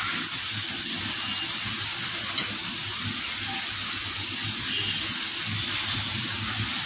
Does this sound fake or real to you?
real